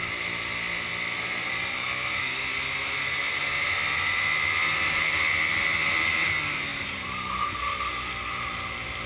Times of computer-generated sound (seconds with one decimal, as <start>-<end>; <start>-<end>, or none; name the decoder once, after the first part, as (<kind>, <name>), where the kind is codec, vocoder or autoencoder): none